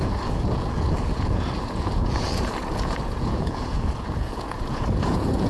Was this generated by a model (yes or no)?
yes